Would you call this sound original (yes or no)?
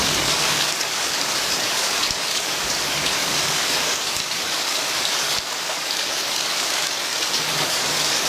no